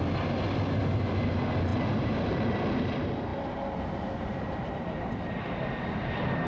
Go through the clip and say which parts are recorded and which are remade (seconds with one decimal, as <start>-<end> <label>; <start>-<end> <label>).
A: 0.0-3.3 recorded; 3.3-6.5 remade